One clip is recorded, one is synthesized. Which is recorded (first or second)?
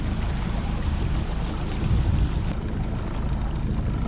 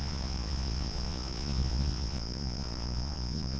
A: first